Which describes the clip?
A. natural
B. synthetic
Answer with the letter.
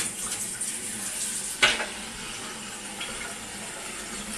A